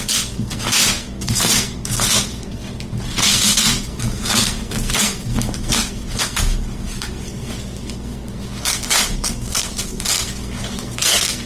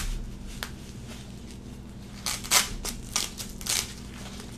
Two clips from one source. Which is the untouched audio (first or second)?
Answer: second